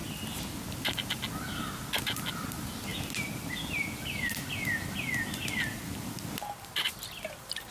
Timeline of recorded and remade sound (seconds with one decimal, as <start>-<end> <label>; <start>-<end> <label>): 0.0-7.7 recorded